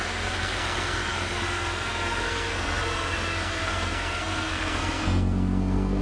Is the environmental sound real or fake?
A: fake